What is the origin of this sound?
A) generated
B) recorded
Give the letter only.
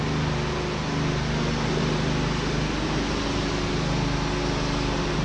B